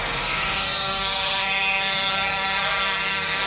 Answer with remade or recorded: remade